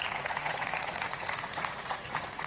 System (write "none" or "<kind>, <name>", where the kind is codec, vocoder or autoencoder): vocoder, Vocos